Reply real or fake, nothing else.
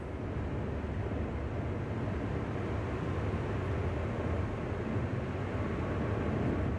real